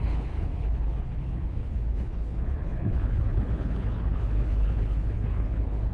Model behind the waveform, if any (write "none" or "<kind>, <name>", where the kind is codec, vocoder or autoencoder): codec, HILCodec